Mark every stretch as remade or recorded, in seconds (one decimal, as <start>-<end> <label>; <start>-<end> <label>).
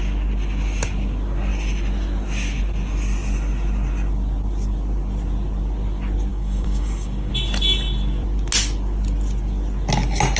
0.0-6.3 recorded; 6.3-7.3 remade; 7.3-10.4 recorded